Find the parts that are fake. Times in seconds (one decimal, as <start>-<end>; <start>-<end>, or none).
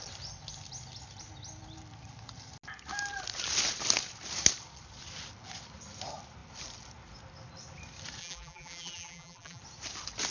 8.2-9.6